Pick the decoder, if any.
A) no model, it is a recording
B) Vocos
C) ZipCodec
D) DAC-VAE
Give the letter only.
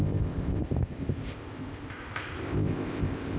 C